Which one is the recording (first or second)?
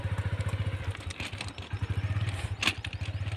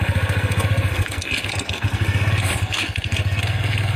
first